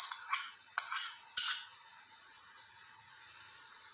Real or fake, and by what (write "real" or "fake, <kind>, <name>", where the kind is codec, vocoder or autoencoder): fake, vocoder, Vocos